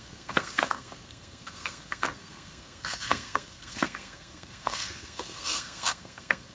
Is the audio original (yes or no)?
no